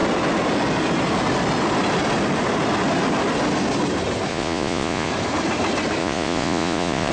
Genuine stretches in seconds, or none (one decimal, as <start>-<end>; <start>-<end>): 0.0-4.3; 5.1-6.0